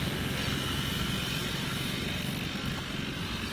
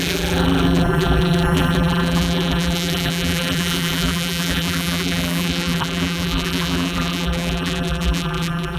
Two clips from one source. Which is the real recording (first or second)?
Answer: first